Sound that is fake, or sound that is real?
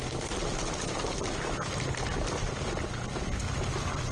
real